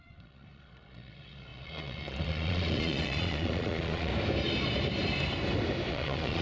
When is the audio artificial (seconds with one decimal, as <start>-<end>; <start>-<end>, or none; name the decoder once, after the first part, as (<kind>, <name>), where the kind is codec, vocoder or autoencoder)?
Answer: 0.0-4.1 (vocoder, Vocos); 5.9-6.4